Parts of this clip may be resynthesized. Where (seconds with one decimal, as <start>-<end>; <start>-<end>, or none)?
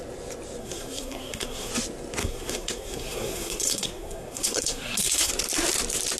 0.6-1.7; 2.2-5.3